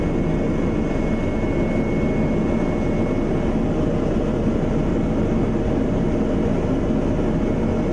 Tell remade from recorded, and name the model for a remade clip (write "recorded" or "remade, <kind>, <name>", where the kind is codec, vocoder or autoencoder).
recorded